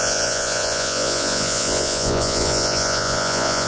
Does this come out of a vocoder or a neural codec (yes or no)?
yes